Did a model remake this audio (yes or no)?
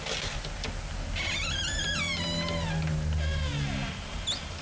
no